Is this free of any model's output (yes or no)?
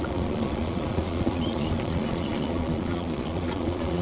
no